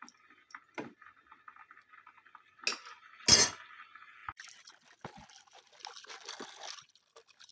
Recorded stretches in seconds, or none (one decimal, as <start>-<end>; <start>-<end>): 0.0-7.5

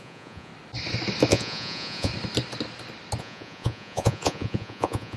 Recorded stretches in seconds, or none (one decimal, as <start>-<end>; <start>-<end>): 0.5-1.3; 2.1-3.2

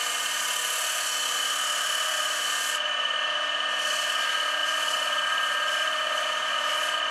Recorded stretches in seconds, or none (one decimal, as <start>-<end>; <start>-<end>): 0.0-4.6; 6.5-7.1

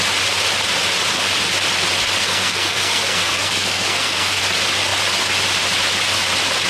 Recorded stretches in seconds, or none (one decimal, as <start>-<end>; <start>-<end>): 0.0-2.2; 4.4-6.7

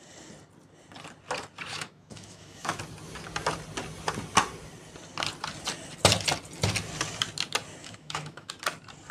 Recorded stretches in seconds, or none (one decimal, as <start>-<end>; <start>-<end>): 0.0-1.7; 2.8-7.8; 8.5-9.1